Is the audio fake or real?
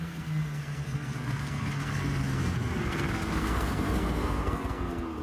fake